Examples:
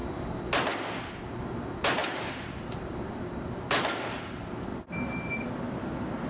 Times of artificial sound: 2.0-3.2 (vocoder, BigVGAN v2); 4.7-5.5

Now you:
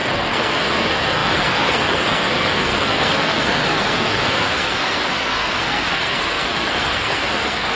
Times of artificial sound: 0.0-7.8 (codec, SNAC)